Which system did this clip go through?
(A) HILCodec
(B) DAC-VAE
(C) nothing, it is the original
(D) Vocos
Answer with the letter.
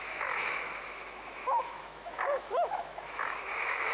B